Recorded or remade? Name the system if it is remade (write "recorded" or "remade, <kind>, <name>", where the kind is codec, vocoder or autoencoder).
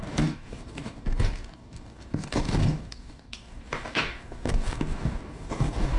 remade, codec, DAC